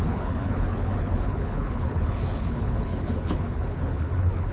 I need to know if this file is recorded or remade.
remade